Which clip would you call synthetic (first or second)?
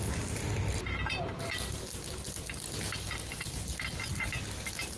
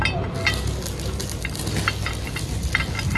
first